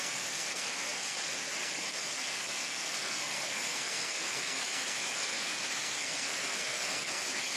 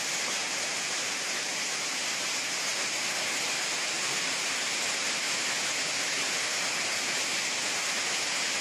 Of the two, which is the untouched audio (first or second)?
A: second